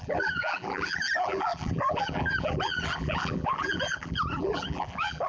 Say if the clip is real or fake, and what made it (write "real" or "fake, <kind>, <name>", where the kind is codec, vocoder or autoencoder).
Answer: fake, vocoder, BigVGAN v2